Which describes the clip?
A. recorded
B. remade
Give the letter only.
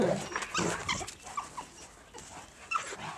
A